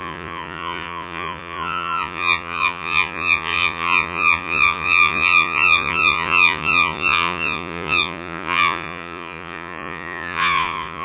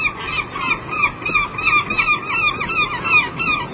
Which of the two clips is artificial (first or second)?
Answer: first